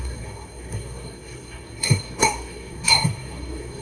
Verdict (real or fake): fake